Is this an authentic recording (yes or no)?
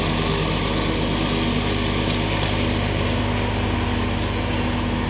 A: yes